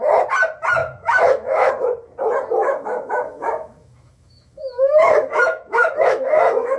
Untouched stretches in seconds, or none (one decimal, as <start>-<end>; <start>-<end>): 0.0-0.8; 1.7-2.6